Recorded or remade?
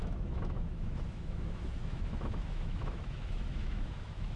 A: remade